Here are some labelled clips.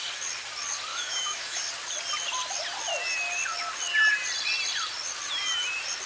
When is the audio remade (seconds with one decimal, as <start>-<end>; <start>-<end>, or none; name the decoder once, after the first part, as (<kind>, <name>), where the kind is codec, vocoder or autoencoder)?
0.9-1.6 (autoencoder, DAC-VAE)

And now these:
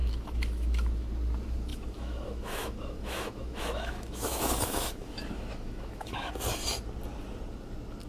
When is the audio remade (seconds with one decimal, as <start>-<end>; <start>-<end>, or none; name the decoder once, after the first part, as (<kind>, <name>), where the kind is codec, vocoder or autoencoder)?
0.0-1.1 (autoencoder, DAC-VAE); 1.7-6.3

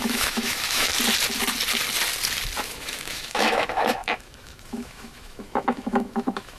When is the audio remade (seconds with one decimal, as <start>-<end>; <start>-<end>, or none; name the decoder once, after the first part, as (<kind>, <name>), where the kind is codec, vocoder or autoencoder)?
0.0-0.9 (autoencoder, DAC-VAE); 2.6-6.6

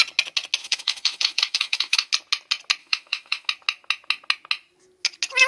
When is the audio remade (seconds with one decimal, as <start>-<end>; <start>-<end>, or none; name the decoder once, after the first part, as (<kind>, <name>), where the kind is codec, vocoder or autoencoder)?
0.6-2.1 (autoencoder, DAC-VAE); 2.8-3.5